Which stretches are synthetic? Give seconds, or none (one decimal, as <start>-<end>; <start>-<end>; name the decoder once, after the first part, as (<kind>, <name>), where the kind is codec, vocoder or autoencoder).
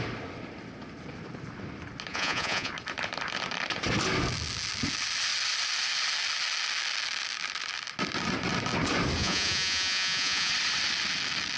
2.1-2.7 (vocoder, Vocos); 9.2-10.5